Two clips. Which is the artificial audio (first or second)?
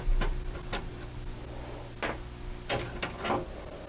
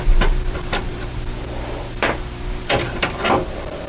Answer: second